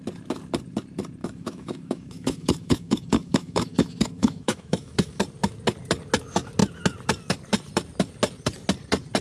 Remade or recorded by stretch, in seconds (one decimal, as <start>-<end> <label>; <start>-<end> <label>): 0.0-1.2 recorded; 1.2-5.2 remade; 5.2-9.2 recorded